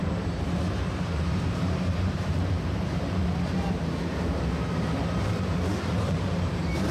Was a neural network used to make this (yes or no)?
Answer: yes